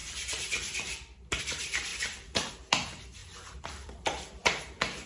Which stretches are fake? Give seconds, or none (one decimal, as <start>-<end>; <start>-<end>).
0.0-1.4; 1.9-2.5; 3.2-4.6